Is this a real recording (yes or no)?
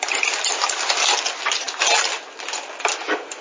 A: yes